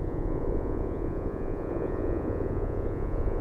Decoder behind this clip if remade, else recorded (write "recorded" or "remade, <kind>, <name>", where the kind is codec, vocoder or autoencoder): remade, vocoder, Vocos